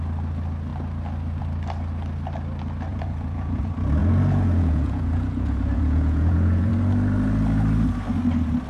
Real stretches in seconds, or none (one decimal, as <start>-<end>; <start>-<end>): 0.0-2.9; 3.6-4.0; 6.7-8.7